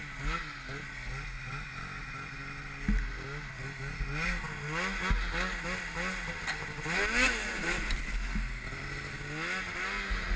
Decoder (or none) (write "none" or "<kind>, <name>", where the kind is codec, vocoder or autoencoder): none